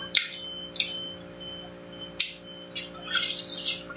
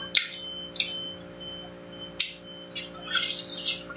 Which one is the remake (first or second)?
first